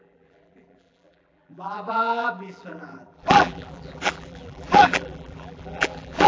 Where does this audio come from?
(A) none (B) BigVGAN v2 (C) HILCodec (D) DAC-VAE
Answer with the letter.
B